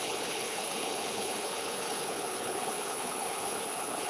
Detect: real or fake fake